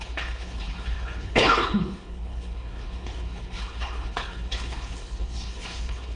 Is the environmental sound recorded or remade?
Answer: remade